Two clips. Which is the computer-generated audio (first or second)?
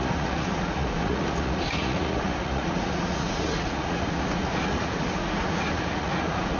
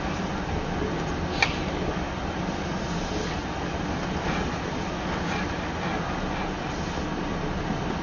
first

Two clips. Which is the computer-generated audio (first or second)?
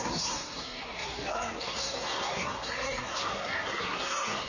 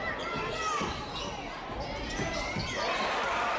first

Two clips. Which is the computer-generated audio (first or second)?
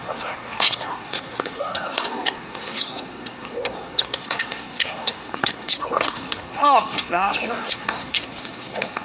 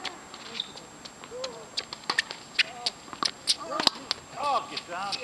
first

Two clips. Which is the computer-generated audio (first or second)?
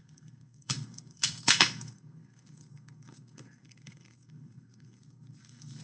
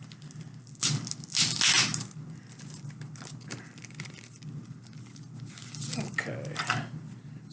first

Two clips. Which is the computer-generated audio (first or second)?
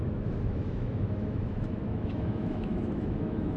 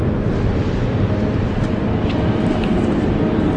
first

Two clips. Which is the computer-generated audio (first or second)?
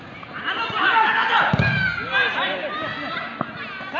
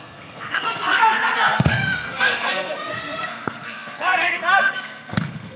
second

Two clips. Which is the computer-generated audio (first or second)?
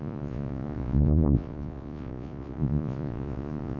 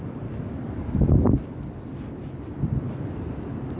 first